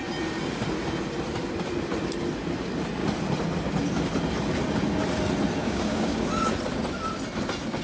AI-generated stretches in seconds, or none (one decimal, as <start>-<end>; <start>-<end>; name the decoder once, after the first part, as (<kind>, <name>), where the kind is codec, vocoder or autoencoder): 5.6-6.3 (codec, DAC)